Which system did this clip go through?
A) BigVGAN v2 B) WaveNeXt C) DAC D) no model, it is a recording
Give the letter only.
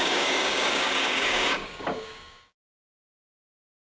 C